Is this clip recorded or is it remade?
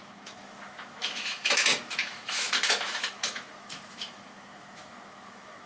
remade